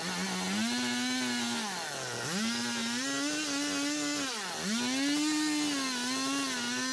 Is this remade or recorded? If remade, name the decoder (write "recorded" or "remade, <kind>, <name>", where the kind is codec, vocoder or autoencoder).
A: recorded